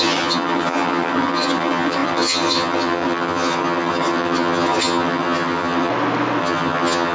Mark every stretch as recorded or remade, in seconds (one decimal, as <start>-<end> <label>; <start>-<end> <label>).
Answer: 0.0-5.9 remade; 5.9-6.4 recorded; 6.4-7.1 remade